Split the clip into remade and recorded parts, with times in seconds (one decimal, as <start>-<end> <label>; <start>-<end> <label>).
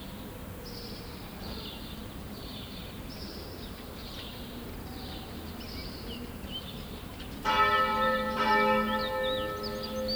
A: 0.0-2.2 recorded; 2.2-4.3 remade; 4.3-5.8 recorded; 5.8-7.3 remade; 7.3-7.9 recorded; 7.9-8.5 remade; 8.5-10.2 recorded